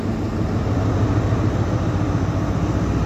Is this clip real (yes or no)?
yes